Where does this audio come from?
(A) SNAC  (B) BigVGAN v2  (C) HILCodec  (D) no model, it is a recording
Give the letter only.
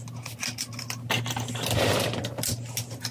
D